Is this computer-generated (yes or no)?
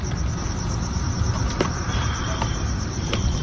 yes